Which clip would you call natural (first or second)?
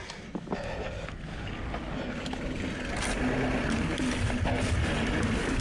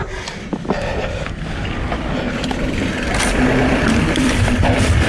first